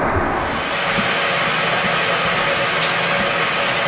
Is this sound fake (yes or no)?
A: no